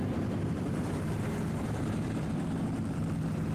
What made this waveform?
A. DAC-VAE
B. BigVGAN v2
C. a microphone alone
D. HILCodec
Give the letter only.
C